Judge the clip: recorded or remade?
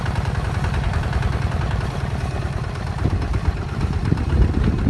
recorded